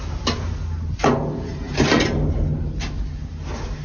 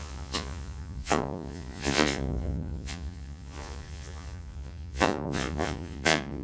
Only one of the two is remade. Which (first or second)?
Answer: second